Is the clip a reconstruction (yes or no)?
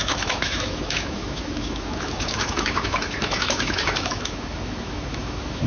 yes